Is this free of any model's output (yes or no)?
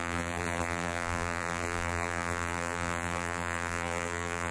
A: no